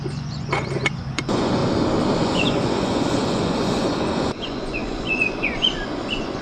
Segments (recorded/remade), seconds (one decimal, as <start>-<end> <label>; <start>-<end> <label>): 0.0-1.6 remade; 1.6-2.2 recorded; 2.2-6.4 remade